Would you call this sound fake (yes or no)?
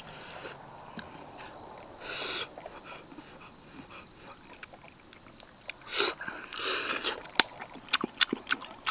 no